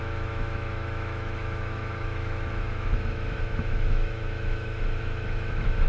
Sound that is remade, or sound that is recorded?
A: remade